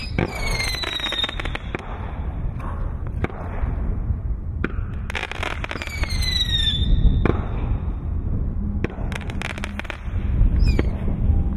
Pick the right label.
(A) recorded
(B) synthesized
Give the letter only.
A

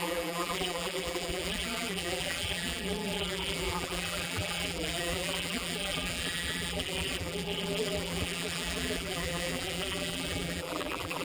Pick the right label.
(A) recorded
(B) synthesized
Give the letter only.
B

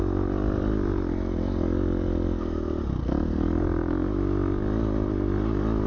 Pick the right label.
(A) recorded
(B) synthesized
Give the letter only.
A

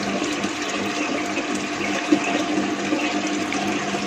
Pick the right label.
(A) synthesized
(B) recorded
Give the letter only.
B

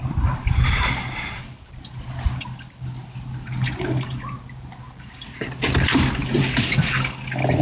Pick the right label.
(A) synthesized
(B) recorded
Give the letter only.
B